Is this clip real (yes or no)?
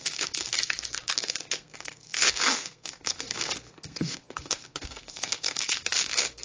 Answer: no